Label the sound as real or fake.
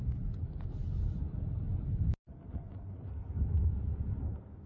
real